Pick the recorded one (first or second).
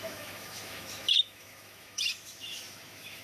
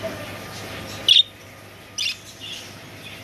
second